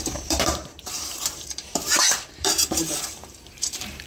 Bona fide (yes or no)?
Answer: no